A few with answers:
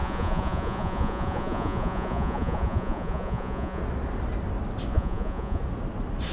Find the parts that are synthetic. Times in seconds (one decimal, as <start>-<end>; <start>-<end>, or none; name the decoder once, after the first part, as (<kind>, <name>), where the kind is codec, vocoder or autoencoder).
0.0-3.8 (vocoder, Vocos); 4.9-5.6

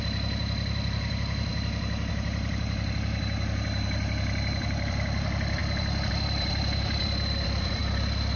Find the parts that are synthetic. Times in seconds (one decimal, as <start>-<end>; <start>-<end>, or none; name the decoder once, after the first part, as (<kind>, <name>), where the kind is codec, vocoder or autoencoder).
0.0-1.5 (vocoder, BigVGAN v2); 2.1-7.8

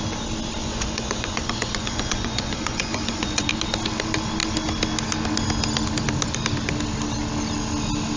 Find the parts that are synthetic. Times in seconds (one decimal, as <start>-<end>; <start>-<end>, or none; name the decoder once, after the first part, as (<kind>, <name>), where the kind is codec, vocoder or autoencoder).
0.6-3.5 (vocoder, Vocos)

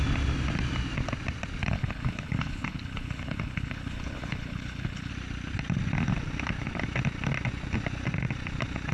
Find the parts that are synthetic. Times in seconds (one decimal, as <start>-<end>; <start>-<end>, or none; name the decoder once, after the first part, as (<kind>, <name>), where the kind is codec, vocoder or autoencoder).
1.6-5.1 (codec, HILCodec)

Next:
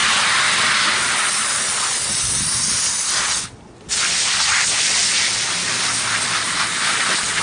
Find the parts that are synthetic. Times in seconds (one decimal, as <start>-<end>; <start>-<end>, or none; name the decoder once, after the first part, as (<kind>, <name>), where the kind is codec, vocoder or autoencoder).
4.1-5.0 (vocoder, BigVGAN v2); 5.6-7.4

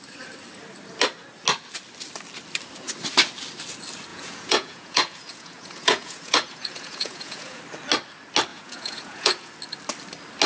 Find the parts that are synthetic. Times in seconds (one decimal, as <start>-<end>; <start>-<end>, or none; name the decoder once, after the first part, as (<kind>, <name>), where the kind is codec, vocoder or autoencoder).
4.1-7.6 (vocoder, Vocos); 8.5-9.5

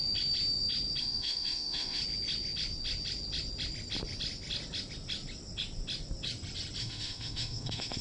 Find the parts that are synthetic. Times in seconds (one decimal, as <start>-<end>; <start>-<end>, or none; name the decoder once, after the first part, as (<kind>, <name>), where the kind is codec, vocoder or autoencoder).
1.0-2.0 (autoencoder, DAC-VAE); 6.8-8.0

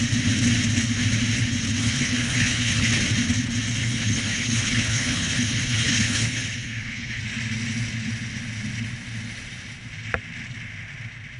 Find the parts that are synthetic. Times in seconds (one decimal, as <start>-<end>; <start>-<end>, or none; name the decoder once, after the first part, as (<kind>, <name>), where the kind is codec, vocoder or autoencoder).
1.8-2.9 (codec, HILCodec); 3.8-7.2